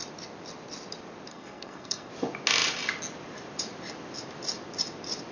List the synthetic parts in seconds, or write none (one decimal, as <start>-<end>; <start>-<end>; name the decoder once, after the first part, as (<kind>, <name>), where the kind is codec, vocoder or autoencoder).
1.3-2.1 (codec, SNAC)